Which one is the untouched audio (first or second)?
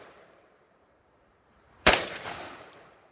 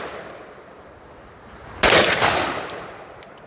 second